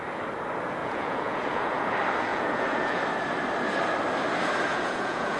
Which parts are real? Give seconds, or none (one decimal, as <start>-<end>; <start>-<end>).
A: 0.0-0.8; 1.9-2.3; 3.0-4.7